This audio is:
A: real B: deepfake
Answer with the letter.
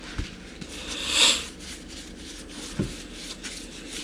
A